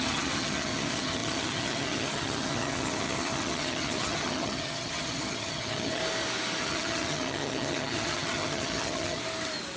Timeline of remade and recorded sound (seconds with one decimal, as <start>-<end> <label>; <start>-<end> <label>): 0.0-6.0 remade; 6.0-6.6 recorded; 6.6-9.2 remade; 9.2-9.8 recorded

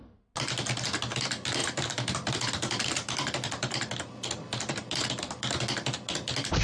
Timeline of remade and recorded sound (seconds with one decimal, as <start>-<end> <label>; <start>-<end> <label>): 0.0-1.6 recorded; 1.6-5.6 remade; 5.6-6.6 recorded

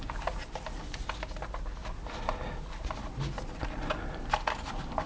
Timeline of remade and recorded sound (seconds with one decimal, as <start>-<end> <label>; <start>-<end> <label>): 0.0-5.1 recorded

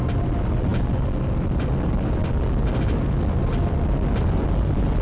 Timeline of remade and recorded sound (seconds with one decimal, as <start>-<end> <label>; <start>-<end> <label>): 0.0-5.0 recorded

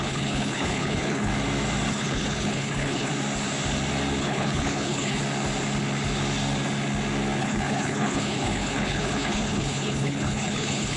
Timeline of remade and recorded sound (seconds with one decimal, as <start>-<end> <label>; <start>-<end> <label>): 0.0-1.3 remade; 1.3-1.9 recorded; 1.9-3.1 remade; 3.1-4.2 recorded; 4.2-5.2 remade; 5.2-7.4 recorded; 7.4-11.0 remade

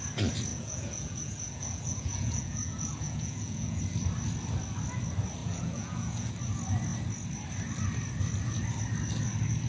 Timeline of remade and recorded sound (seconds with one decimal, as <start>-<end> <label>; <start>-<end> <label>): 0.0-0.5 recorded; 0.5-3.8 remade; 3.8-5.4 recorded; 5.4-6.3 remade; 6.3-9.7 recorded

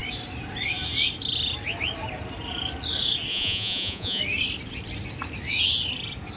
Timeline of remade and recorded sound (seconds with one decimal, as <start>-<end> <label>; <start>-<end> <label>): 0.0-3.3 recorded; 3.3-4.2 remade; 4.2-6.4 recorded

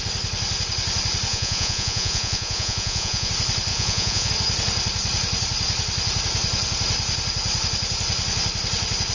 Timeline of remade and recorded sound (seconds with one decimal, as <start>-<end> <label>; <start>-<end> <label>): 0.0-1.3 recorded; 1.3-3.3 remade; 3.3-3.7 recorded; 3.7-4.3 remade; 4.3-9.1 recorded